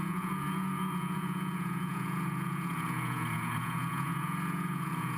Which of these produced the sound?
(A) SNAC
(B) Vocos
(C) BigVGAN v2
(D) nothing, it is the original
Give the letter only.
B